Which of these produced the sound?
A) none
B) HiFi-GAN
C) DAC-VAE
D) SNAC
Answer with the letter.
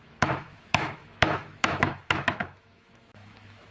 C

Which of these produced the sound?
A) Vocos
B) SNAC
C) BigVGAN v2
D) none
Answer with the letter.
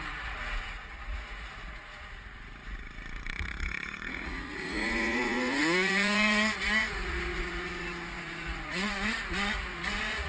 A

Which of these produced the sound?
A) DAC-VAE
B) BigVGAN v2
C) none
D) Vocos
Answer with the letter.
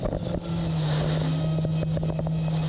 C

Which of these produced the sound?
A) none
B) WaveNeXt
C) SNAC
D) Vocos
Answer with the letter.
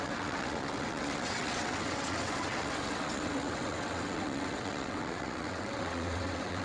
B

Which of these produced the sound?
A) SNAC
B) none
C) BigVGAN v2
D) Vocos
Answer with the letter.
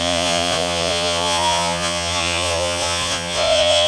D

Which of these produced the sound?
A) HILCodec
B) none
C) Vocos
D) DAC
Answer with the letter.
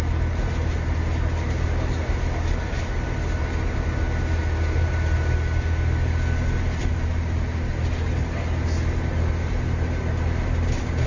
B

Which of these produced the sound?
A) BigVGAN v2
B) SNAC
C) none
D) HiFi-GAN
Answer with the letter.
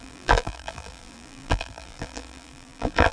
A